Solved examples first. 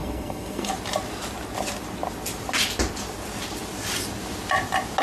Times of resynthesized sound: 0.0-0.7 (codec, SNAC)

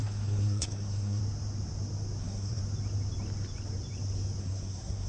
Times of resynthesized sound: 0.0-1.2 (codec, SNAC); 2.2-2.6; 4.4-5.1